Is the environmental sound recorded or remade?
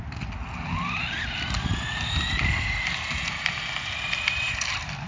recorded